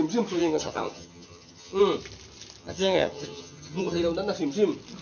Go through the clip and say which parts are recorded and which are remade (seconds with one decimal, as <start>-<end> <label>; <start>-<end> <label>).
0.0-0.4 recorded; 0.4-1.8 remade; 1.8-2.6 recorded; 2.6-4.0 remade; 4.0-5.0 recorded